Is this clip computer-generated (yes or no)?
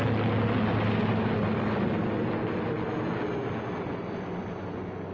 no